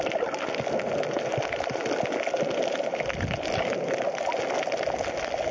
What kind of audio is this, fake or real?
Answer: real